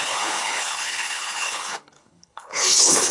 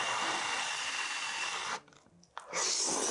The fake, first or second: first